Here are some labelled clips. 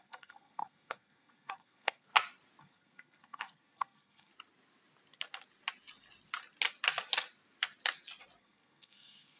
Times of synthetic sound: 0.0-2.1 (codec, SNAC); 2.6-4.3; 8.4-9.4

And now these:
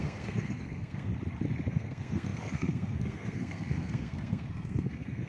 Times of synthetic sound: 0.0-1.1 (codec, SNAC); 1.7-5.3

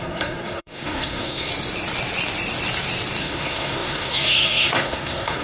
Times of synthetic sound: 0.0-1.5 (codec, SNAC); 3.2-5.4

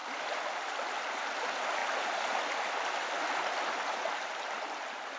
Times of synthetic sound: none

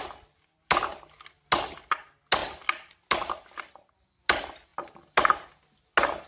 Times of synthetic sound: none

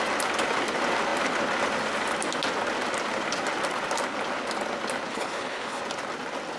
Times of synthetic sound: 5.1-5.8 (codec, HILCodec)